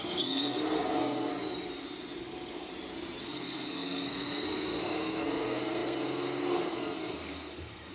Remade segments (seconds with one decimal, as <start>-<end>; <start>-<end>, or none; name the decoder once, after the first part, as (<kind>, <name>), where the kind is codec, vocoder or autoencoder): 0.0-1.3 (codec, SNAC); 2.2-2.7; 3.2-7.9